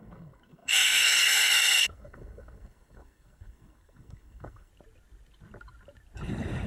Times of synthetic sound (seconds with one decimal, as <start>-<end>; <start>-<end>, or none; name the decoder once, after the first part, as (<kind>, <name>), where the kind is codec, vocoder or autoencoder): 0.0-4.7 (codec, SNAC)